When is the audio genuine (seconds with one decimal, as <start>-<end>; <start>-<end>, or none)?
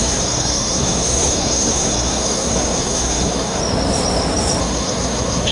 3.6-4.6